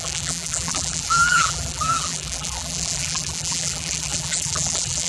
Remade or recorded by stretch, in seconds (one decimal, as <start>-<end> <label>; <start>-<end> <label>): 0.0-5.1 remade